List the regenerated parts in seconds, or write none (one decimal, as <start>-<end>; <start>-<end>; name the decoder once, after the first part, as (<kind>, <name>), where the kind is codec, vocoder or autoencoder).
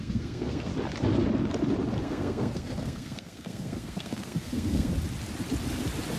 0.0-0.7 (codec, SNAC); 2.0-4.9